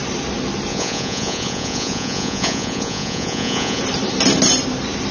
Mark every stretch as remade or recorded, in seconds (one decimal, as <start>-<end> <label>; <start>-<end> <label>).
0.0-0.7 recorded; 0.7-3.8 remade; 3.8-5.1 recorded